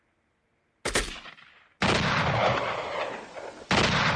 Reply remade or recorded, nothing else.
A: recorded